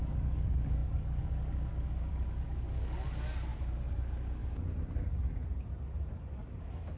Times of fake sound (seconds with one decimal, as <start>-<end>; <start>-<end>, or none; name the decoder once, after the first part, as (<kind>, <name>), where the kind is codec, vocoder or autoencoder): 0.0-4.4 (codec, DAC); 6.1-7.0